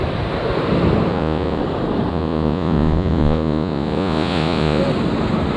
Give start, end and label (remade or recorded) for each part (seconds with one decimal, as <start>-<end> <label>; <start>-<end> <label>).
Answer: 0.0-1.1 recorded; 1.1-1.6 remade; 1.6-2.1 recorded; 2.1-4.8 remade; 4.8-5.6 recorded